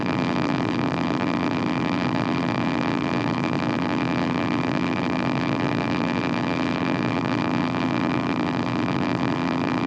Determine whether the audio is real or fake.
fake